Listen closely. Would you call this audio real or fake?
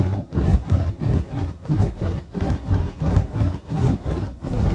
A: fake